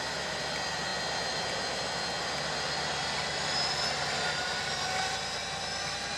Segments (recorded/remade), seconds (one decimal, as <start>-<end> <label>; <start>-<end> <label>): 0.0-6.2 recorded